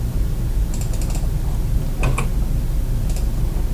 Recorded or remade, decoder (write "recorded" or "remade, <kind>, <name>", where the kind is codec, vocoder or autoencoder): recorded